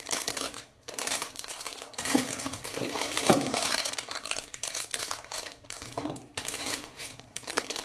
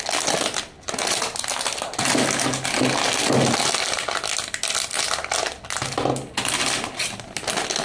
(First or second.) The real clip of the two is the second